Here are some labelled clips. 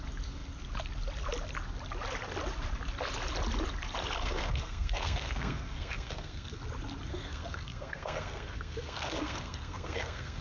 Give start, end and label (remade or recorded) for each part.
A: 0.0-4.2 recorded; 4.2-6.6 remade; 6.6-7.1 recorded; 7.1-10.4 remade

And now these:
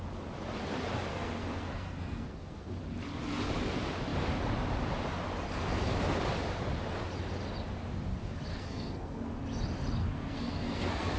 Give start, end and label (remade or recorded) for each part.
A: 0.0-1.1 recorded; 1.1-2.7 remade; 2.7-8.5 recorded; 8.5-9.4 remade; 9.4-10.0 recorded; 10.0-11.2 remade

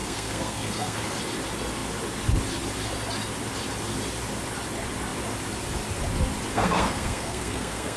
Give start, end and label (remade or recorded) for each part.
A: 0.0-1.0 remade; 1.0-6.5 recorded; 6.5-8.0 remade

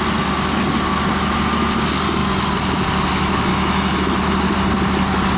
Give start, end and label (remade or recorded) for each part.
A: 0.0-3.5 recorded; 3.5-4.5 remade; 4.5-5.4 recorded

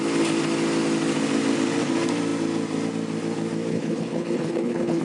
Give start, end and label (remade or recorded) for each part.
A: 0.0-3.7 recorded; 3.7-5.0 remade

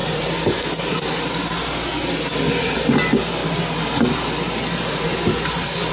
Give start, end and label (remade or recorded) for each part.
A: 0.0-5.9 recorded

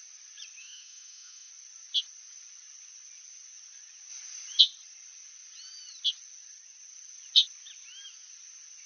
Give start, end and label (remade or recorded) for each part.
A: 0.0-0.6 recorded; 0.6-1.5 remade; 1.5-8.9 recorded

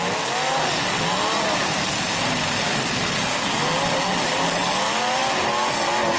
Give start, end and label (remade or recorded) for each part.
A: 0.0-6.2 recorded